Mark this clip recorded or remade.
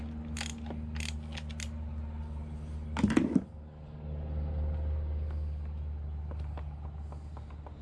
recorded